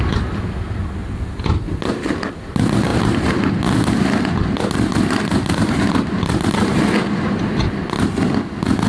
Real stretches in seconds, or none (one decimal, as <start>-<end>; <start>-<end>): 0.0-1.0; 2.3-2.9; 7.8-8.9